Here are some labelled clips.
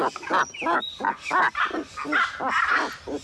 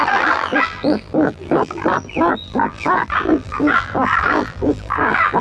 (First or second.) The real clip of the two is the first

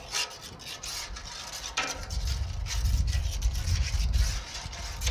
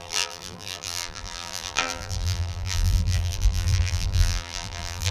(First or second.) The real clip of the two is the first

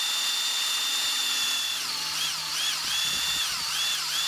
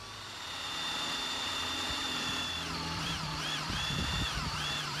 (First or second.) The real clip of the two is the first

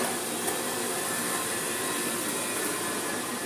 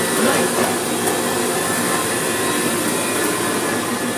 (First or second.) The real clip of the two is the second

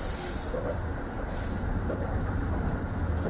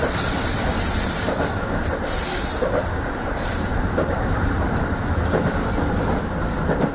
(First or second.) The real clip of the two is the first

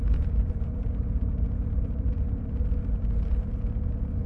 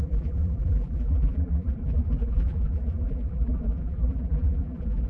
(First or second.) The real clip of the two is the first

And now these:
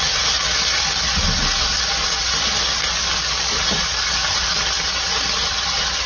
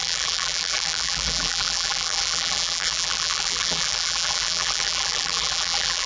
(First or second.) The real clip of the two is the first